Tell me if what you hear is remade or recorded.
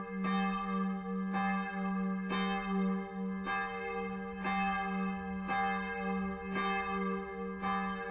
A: recorded